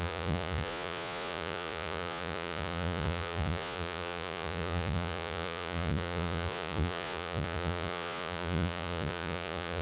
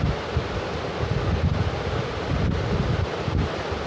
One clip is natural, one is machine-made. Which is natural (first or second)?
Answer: second